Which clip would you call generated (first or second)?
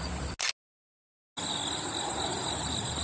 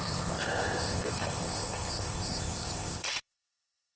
second